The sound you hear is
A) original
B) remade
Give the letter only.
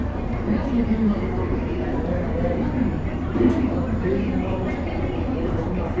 B